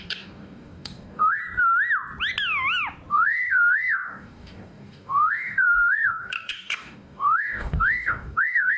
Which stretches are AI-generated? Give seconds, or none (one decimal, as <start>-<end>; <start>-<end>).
0.0-1.4; 3.1-8.8